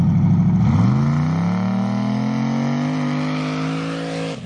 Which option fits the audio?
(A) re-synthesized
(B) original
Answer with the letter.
B